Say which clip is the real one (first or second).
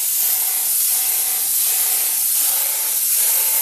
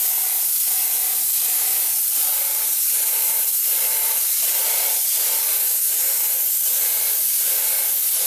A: first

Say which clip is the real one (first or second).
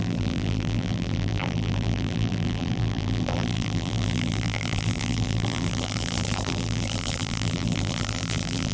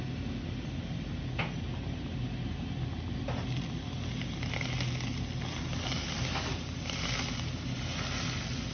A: second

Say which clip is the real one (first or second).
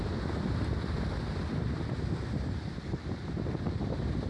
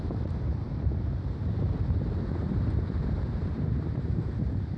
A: first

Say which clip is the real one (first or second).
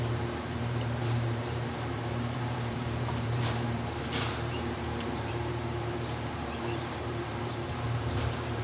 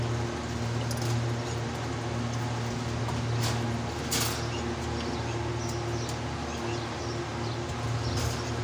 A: second